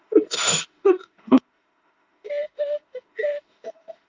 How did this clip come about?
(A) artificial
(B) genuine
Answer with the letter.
A